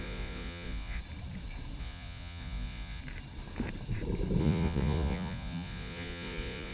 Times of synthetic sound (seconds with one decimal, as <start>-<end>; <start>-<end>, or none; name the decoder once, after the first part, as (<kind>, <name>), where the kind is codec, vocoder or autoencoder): 0.0-1.0 (vocoder, Vocos); 1.8-3.0; 4.4-6.7